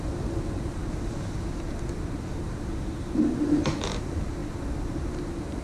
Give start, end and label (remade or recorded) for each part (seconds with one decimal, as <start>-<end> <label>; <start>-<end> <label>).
0.0-0.8 remade; 0.8-2.4 recorded; 2.4-4.4 remade; 4.4-5.1 recorded; 5.1-5.6 remade